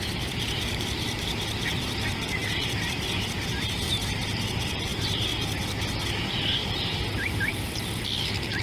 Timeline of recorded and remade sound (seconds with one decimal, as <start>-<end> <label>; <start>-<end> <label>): 0.0-6.6 recorded; 6.6-8.6 remade